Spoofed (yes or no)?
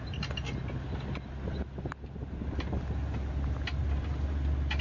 no